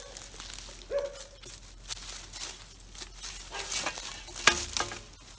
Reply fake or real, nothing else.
real